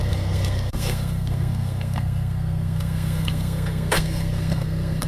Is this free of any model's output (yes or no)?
no